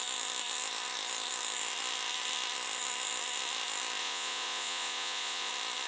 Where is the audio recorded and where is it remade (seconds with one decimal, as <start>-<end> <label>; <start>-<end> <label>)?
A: 0.0-4.0 recorded; 4.0-5.5 remade; 5.5-5.9 recorded